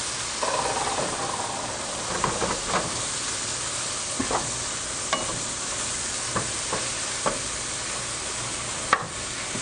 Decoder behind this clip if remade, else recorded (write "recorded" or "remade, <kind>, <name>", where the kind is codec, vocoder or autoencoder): recorded